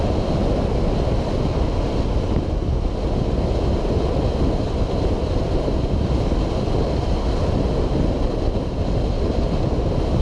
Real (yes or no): yes